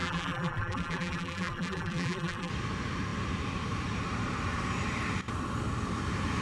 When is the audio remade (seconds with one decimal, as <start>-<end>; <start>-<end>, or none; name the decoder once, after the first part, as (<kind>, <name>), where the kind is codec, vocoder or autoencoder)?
0.0-2.5 (vocoder, BigVGAN v2)